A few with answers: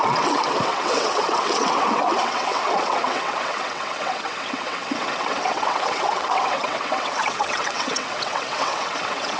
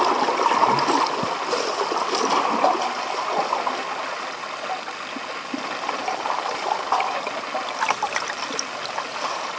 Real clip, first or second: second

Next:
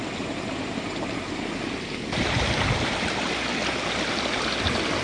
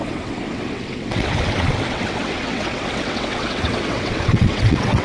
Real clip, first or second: first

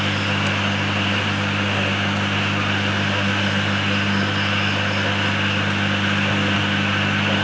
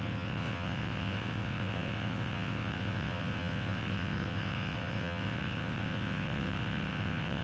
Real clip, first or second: first